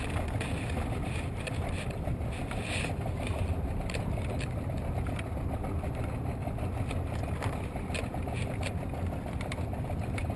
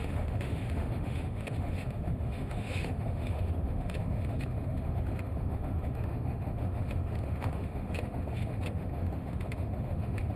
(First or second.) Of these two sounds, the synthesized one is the second